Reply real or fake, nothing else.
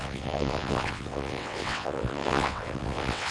fake